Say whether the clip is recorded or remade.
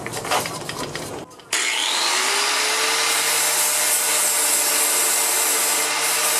recorded